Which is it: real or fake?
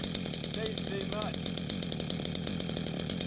real